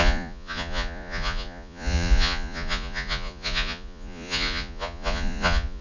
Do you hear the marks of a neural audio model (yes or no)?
yes